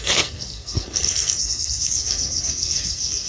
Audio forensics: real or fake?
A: fake